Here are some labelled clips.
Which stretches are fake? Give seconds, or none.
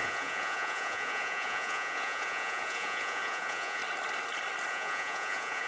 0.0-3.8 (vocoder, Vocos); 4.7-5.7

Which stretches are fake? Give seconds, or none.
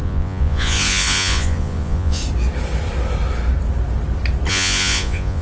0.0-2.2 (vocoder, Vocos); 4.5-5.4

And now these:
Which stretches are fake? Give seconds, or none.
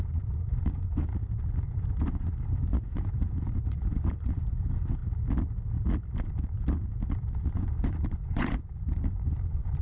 0.0-1.1 (vocoder, Vocos); 1.6-5.0; 7.4-9.8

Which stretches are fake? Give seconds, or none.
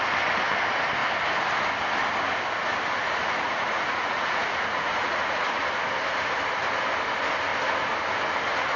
3.0-5.6 (vocoder, Vocos)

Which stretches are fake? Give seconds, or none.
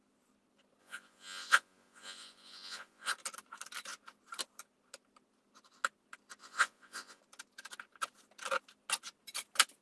0.8-3.1 (vocoder, Vocos); 6.4-7.2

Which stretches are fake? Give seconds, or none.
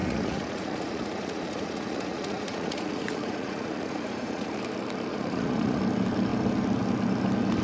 0.0-4.6 (vocoder, Vocos); 5.1-5.8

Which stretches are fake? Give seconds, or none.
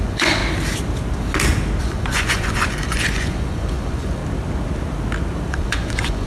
0.0-0.4 (vocoder, Vocos); 1.8-4.2; 5.5-6.3